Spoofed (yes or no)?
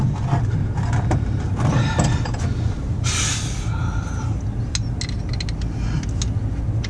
no